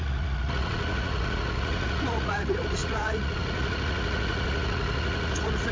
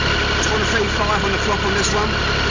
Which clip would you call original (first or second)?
second